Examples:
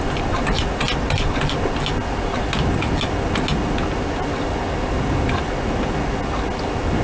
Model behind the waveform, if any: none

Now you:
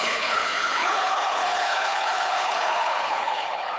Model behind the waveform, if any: codec, HILCodec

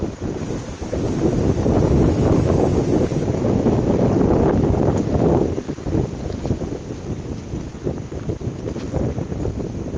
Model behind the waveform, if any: none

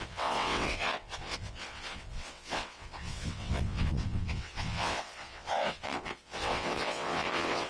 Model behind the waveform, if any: vocoder, WaveNeXt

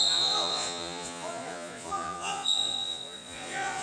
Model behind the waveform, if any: vocoder, Vocos